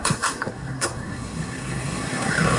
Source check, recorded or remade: remade